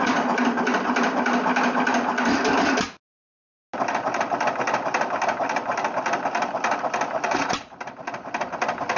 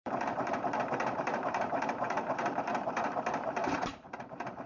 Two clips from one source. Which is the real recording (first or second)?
first